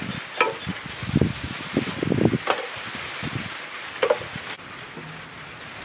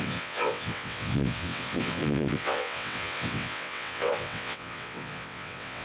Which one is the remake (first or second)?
second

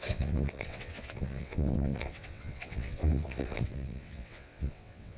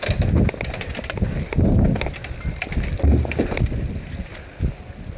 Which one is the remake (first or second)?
first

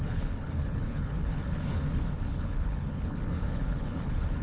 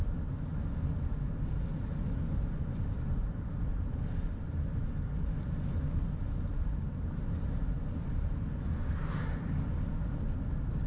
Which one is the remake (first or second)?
first